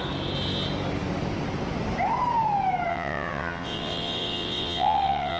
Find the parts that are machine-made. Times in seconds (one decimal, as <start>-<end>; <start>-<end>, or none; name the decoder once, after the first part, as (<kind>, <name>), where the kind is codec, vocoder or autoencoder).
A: 2.9-5.4 (vocoder, WaveNeXt)